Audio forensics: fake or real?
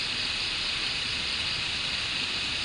real